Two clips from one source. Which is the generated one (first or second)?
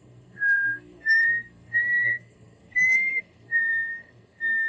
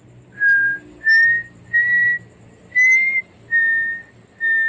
first